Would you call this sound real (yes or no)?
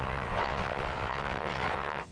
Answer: no